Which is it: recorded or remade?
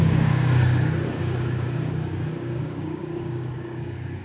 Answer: remade